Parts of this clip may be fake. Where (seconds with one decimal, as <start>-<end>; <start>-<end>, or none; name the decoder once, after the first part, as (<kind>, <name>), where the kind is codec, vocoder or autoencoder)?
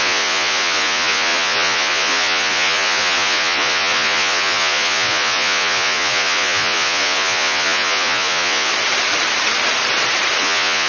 0.0-8.7 (vocoder, Vocos); 10.4-10.9